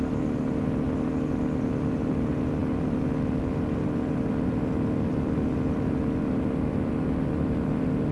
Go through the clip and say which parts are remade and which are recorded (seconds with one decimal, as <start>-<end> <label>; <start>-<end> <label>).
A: 0.0-8.1 recorded